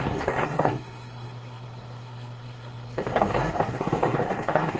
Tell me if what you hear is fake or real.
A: fake